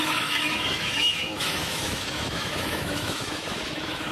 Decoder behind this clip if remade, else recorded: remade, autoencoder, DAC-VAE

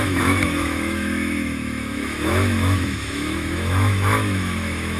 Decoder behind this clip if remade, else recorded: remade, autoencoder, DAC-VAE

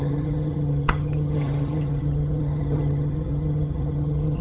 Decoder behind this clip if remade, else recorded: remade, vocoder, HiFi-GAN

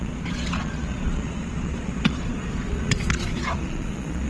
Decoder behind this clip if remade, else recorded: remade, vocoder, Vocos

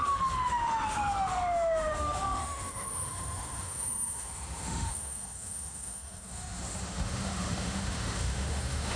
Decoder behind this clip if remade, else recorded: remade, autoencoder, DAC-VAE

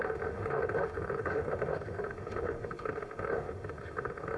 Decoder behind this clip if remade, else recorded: remade, autoencoder, DAC-VAE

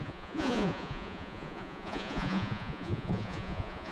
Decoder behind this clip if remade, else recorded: remade, vocoder, Vocos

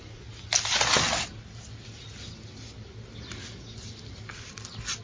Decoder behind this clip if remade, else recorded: recorded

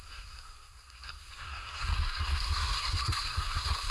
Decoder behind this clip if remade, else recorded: remade, codec, SNAC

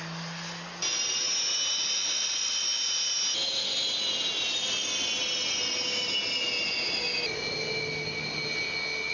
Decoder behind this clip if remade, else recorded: recorded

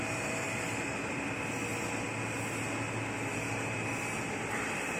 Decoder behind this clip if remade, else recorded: recorded